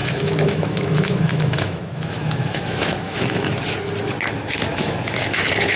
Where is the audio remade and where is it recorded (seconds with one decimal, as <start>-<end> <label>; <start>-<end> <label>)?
0.0-3.5 remade; 3.5-4.7 recorded; 4.7-5.8 remade